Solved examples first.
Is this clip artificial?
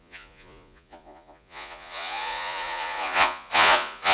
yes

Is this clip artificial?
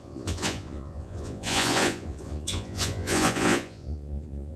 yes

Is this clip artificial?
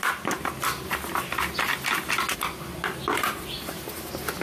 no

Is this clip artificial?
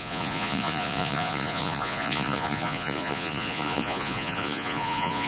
yes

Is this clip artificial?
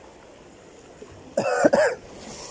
no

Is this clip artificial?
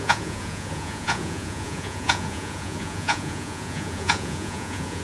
yes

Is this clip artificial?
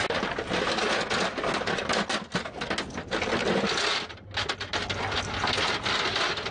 no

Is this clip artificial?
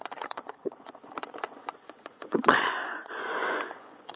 yes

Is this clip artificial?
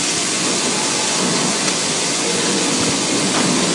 yes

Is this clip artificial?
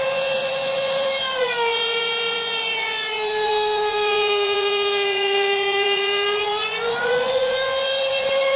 yes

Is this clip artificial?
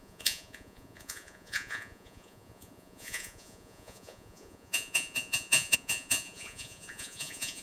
yes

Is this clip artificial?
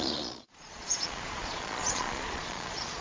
yes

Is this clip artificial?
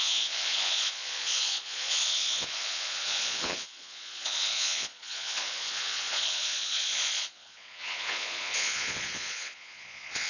yes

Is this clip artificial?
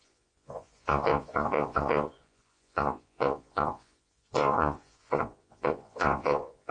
yes